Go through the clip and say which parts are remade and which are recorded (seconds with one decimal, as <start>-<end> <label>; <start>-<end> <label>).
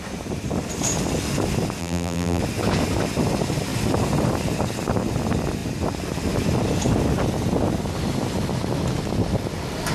0.0-1.8 recorded; 1.8-2.4 remade; 2.4-9.9 recorded